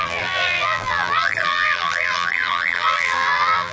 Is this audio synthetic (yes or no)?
yes